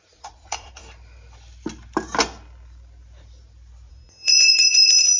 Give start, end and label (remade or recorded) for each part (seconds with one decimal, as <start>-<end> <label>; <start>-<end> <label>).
0.0-0.8 remade; 0.8-3.9 recorded; 3.9-5.2 remade